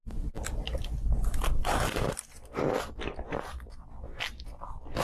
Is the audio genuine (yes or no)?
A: yes